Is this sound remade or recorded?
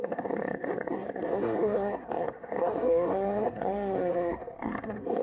remade